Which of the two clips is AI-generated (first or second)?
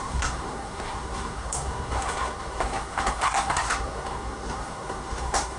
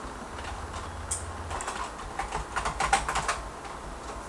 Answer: first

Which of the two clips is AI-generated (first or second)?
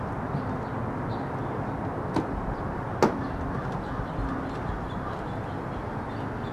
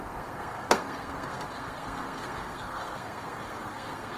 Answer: second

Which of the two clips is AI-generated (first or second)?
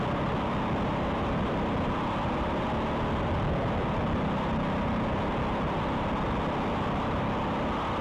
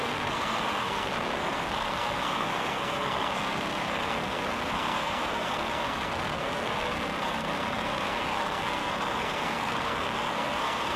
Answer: second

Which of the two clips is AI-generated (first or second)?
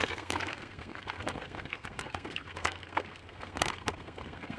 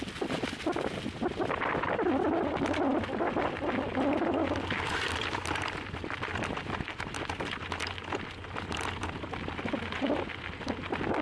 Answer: first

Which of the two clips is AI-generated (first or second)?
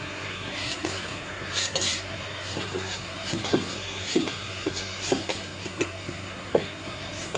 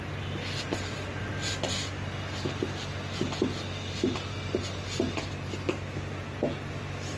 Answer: first